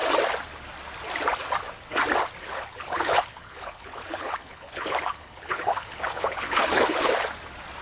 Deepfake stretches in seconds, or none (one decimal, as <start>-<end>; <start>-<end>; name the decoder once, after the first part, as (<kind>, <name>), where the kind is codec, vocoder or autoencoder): 2.4-7.1 (codec, HILCodec)